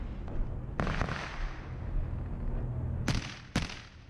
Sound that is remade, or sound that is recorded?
recorded